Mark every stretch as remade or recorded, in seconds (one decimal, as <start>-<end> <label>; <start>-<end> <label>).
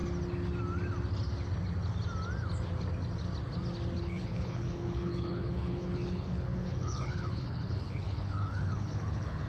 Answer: 0.0-4.0 recorded; 4.0-9.5 remade